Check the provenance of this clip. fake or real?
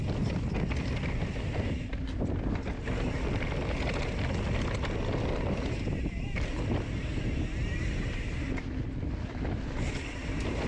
real